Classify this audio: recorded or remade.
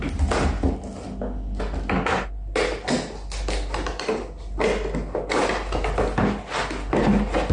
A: recorded